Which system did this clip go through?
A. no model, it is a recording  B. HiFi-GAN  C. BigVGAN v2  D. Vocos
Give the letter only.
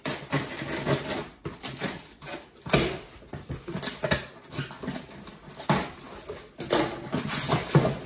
A